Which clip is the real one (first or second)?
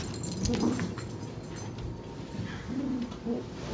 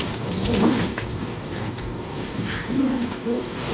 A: first